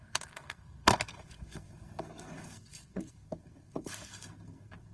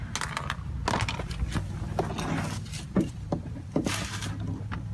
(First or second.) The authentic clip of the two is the second